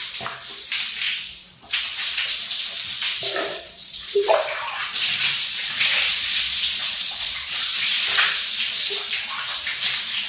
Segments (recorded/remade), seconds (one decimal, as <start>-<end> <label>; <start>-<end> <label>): 0.0-1.4 recorded; 1.4-2.6 remade; 2.6-3.5 recorded; 3.5-8.3 remade; 8.3-10.3 recorded